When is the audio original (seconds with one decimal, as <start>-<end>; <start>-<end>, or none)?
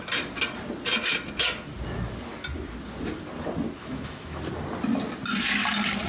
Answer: 0.0-3.8; 4.4-6.1